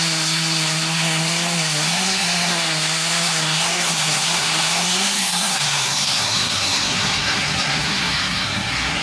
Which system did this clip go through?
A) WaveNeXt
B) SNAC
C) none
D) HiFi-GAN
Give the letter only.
B